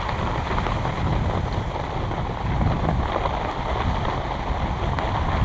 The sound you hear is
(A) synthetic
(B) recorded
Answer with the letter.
B